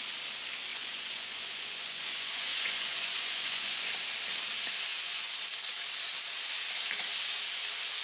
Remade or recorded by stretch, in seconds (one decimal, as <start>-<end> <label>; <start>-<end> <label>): 0.0-0.7 recorded; 0.7-3.9 remade; 3.9-4.9 recorded; 4.9-5.4 remade; 5.4-8.0 recorded